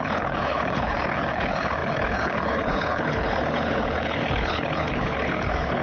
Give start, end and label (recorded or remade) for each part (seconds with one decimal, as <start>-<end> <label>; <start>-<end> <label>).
0.0-5.8 remade